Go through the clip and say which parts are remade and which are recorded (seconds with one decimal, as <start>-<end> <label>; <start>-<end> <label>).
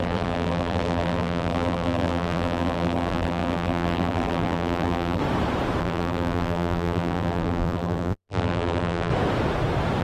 0.0-5.2 remade; 5.2-5.8 recorded; 5.8-9.1 remade; 9.1-10.0 recorded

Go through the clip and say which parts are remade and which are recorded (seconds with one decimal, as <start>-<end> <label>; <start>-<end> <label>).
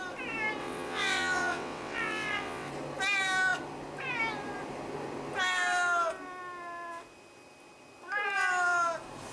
0.0-0.6 recorded; 0.6-2.7 remade; 2.7-9.3 recorded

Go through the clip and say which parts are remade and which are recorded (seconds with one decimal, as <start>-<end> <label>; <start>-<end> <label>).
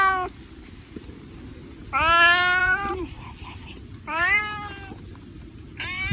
0.0-2.6 recorded; 2.6-4.4 remade; 4.4-6.1 recorded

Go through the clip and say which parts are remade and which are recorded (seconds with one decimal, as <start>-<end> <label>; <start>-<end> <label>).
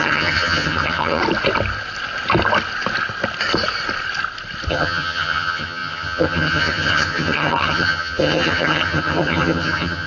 0.0-1.2 remade; 1.2-4.7 recorded; 4.7-10.1 remade